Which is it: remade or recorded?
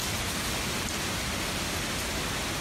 recorded